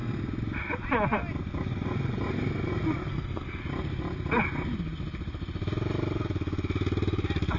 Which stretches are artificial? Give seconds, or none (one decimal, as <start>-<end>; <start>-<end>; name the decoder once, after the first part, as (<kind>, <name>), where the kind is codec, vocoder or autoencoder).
3.1-3.6 (codec, SNAC)

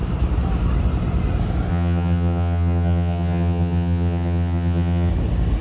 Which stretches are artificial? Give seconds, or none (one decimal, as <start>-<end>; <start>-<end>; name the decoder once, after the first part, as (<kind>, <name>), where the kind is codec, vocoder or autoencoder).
1.7-5.1 (vocoder, HiFi-GAN)

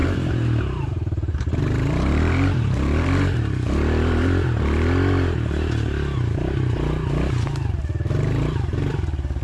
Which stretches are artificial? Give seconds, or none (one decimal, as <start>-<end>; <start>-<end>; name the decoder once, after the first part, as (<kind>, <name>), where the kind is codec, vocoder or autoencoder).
0.0-3.4 (vocoder, BigVGAN v2)

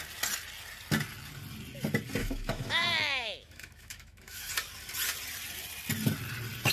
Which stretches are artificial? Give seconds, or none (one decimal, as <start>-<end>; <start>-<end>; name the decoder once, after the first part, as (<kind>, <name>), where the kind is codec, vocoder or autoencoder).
2.2-4.5 (autoencoder, DAC-VAE)